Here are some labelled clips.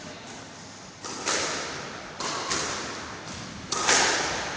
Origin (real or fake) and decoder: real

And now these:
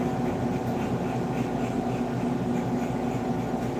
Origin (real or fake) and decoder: real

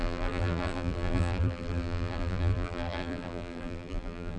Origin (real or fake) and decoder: fake, vocoder, BigVGAN v2